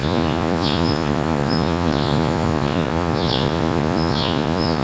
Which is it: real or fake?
fake